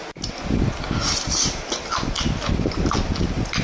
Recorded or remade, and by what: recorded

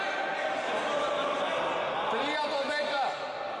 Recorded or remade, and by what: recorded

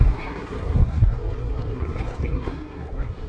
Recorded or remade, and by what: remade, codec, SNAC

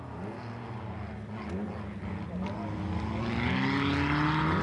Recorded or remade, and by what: recorded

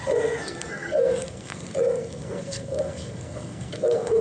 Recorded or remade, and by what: remade, codec, SNAC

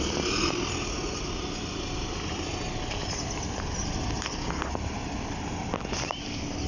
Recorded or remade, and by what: recorded